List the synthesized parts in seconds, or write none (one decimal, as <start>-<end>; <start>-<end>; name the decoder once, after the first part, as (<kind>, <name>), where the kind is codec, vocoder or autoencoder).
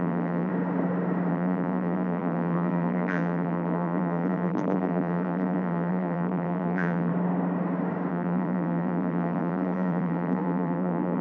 0.0-0.5 (vocoder, BigVGAN v2); 1.3-7.1; 8.1-11.2